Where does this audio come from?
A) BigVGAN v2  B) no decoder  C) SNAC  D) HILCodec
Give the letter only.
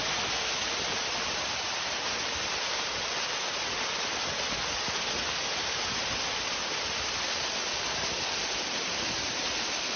B